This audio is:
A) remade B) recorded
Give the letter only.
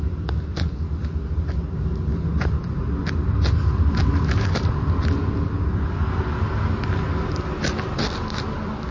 B